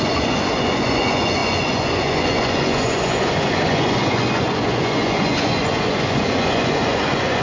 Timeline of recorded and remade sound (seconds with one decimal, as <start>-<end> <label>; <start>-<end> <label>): 0.0-7.4 remade